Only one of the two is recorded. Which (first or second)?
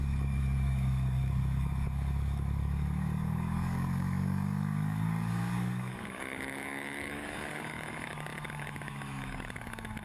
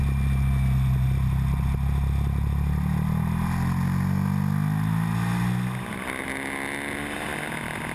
second